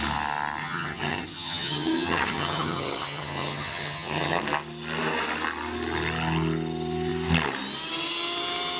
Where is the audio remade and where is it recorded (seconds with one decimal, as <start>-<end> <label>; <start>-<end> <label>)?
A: 0.0-0.6 recorded; 0.6-4.4 remade; 4.4-8.8 recorded